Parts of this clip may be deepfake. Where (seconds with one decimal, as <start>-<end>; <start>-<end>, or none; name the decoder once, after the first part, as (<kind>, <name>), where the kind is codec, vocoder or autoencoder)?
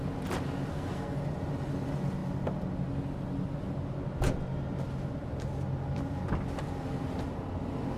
0.7-1.2 (codec, SNAC)